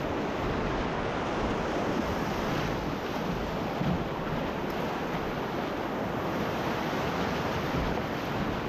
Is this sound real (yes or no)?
yes